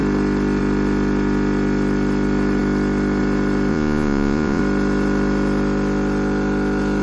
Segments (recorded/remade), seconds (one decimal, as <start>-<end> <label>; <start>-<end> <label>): 0.0-3.7 recorded; 3.7-4.6 remade; 4.6-7.0 recorded